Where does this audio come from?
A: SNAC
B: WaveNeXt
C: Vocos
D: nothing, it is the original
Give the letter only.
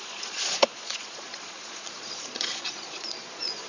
C